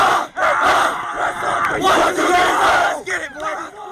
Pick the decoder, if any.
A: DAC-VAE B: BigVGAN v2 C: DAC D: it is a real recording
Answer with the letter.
B